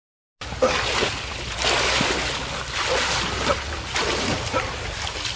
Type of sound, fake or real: real